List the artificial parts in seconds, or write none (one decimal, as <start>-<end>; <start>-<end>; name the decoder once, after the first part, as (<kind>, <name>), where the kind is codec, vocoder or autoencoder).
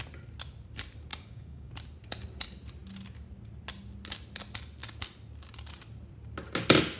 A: 1.1-1.7 (codec, DAC)